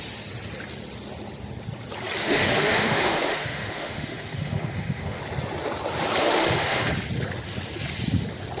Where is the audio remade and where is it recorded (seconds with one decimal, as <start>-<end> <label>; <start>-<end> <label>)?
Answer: 0.0-2.2 recorded; 2.2-5.2 remade; 5.2-6.2 recorded; 6.2-6.9 remade; 6.9-8.6 recorded